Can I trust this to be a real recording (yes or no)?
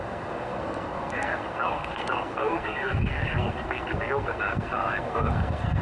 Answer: no